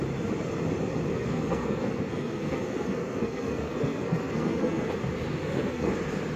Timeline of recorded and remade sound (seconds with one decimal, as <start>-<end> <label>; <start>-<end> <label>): 0.0-1.1 recorded; 1.1-4.9 remade; 4.9-5.4 recorded; 5.4-5.9 remade; 5.9-6.4 recorded